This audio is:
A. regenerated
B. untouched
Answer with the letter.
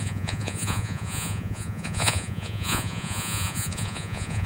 A